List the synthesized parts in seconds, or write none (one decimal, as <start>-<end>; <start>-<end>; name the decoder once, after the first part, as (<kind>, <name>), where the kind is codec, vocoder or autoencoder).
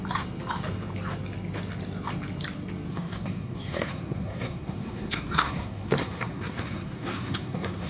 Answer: 2.9-7.9 (codec, SNAC)